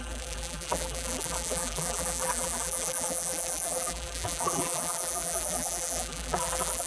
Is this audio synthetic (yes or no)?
yes